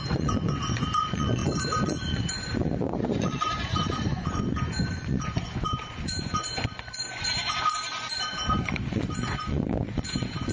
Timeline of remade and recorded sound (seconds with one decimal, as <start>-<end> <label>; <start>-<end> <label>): 0.0-10.5 remade

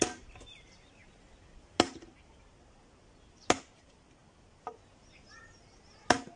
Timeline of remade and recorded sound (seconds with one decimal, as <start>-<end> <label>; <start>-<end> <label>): 0.0-6.4 recorded

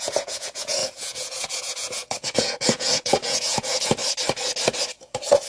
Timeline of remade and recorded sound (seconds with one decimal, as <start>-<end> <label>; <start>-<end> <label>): 0.0-4.0 remade; 4.0-4.8 recorded; 4.8-5.5 remade

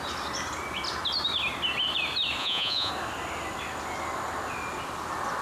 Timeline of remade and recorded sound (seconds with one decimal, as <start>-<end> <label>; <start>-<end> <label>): 0.0-2.4 recorded; 2.4-2.9 remade; 2.9-5.4 recorded

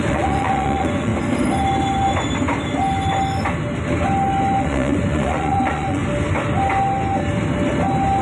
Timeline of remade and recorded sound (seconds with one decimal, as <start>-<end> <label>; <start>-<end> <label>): 0.0-1.1 remade; 1.1-4.6 recorded; 4.6-6.0 remade; 6.0-8.2 recorded

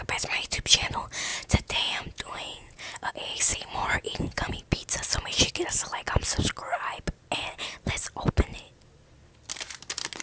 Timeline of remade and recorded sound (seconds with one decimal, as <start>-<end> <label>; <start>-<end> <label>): 0.0-1.3 recorded; 1.3-3.1 remade; 3.1-3.5 recorded; 3.5-4.5 remade; 4.5-10.2 recorded